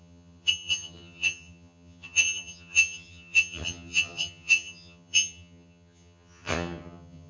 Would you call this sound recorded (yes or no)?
no